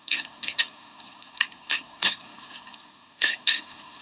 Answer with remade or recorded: remade